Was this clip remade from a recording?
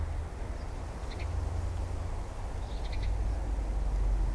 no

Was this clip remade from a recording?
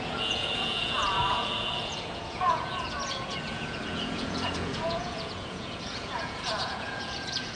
yes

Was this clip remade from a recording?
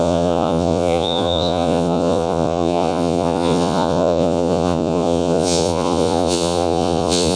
yes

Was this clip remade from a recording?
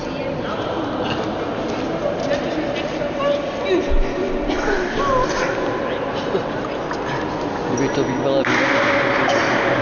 no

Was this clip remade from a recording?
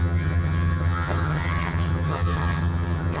yes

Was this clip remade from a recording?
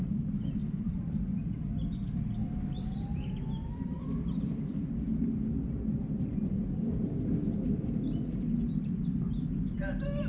yes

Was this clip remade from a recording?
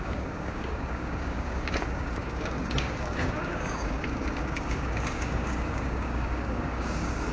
yes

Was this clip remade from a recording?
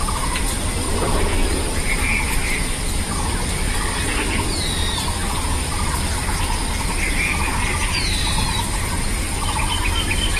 no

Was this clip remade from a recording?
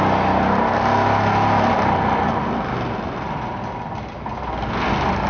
no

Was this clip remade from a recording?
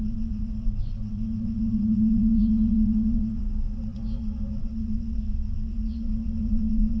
yes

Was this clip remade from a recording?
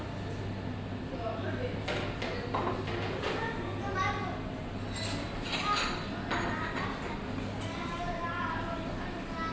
no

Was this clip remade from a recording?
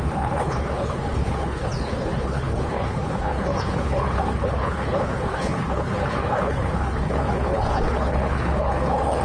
yes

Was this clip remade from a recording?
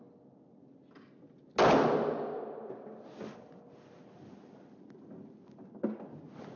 no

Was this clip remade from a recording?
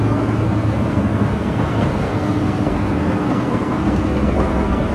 yes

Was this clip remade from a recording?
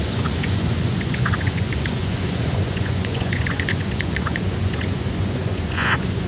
yes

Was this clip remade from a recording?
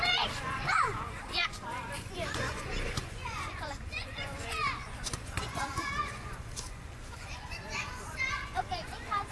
yes